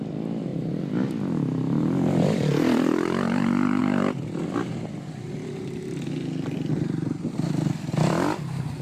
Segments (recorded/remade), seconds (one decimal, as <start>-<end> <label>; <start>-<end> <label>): 0.0-8.8 remade